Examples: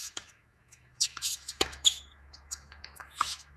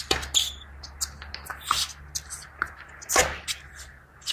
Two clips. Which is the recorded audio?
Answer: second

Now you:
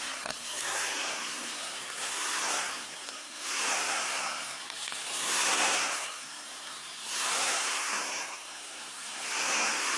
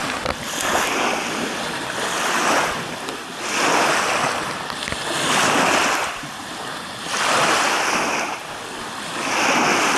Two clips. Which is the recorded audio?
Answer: second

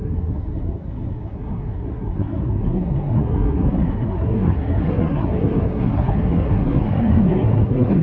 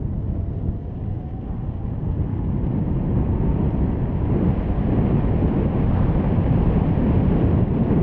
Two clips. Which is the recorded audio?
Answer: second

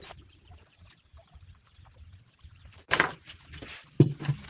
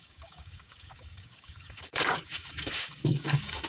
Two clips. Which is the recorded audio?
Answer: first